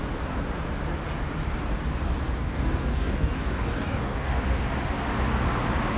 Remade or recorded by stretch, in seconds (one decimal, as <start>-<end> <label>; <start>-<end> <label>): 0.0-2.4 recorded; 2.4-4.4 remade; 4.4-6.0 recorded